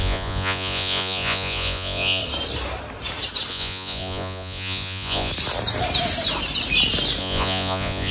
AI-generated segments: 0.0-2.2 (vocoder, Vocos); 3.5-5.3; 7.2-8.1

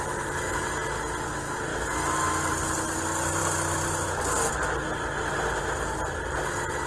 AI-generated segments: none

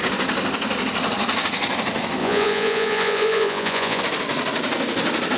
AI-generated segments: 2.2-4.0 (vocoder, Vocos)

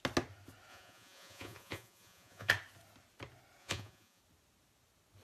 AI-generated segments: 0.7-2.5 (vocoder, Vocos); 3.6-4.2